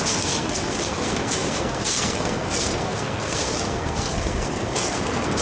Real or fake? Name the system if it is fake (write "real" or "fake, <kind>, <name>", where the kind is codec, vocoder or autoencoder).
fake, codec, SNAC